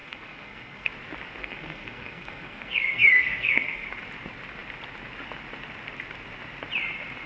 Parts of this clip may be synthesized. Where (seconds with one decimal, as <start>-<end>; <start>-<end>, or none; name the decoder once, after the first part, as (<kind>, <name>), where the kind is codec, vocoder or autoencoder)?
0.0-0.9 (codec, SNAC); 1.4-3.9